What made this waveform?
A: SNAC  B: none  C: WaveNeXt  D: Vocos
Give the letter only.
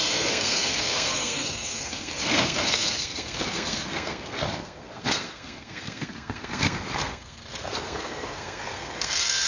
A